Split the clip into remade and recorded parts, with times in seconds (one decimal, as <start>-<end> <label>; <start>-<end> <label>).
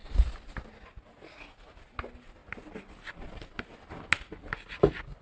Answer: 0.0-5.2 recorded